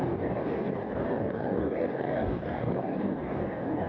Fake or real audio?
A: fake